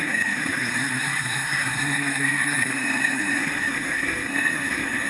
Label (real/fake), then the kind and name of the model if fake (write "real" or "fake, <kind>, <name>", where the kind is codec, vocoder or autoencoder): fake, codec, SNAC